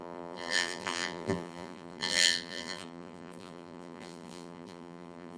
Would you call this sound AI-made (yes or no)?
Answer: yes